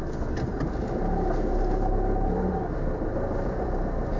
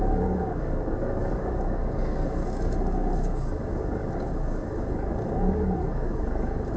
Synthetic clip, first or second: second